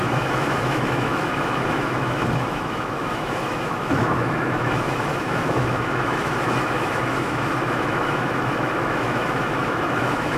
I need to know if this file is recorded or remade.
remade